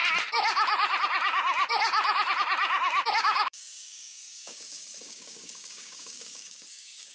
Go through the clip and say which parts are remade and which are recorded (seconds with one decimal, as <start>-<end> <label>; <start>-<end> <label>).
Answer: 0.0-3.2 recorded; 3.2-7.1 remade